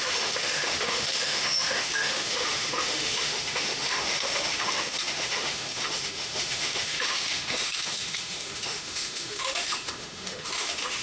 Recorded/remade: remade